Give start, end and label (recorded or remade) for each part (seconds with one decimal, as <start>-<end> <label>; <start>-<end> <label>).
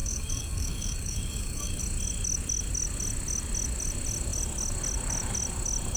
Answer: 0.0-1.8 remade; 1.8-6.0 recorded